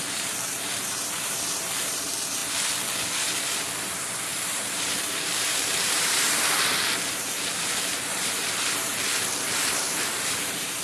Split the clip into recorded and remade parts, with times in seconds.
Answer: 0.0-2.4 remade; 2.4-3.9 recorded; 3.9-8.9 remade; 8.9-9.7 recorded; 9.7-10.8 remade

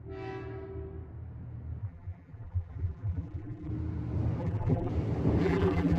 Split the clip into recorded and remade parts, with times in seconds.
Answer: 0.0-1.8 recorded; 1.8-3.7 remade; 3.7-4.4 recorded; 4.4-4.9 remade; 4.9-5.4 recorded; 5.4-6.0 remade